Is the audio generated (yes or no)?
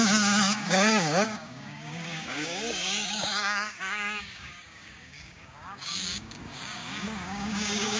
yes